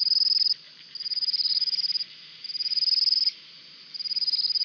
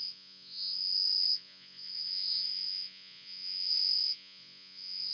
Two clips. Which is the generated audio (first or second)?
second